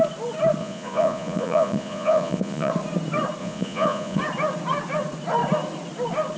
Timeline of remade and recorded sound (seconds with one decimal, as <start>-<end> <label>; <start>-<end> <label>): 0.0-0.6 recorded; 0.6-2.7 remade; 2.7-3.4 recorded; 3.4-4.2 remade; 4.2-6.4 recorded